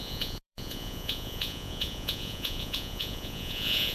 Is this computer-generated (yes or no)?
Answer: yes